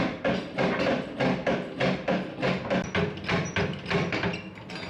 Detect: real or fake real